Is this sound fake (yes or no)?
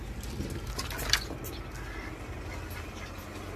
no